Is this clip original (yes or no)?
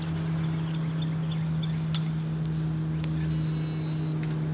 yes